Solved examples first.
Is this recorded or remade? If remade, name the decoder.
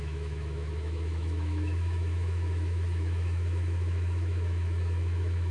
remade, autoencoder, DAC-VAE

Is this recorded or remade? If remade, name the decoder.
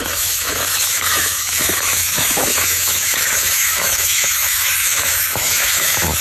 remade, autoencoder, DAC-VAE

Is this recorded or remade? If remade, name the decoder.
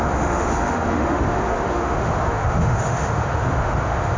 remade, autoencoder, DAC-VAE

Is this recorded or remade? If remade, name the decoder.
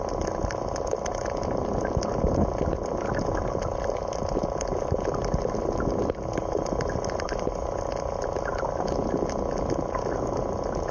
recorded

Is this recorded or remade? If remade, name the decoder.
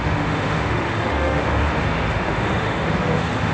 remade, autoencoder, DAC-VAE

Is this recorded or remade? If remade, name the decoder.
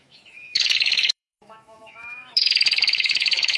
remade, autoencoder, DAC-VAE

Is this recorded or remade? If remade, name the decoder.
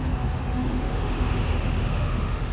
remade, autoencoder, DAC-VAE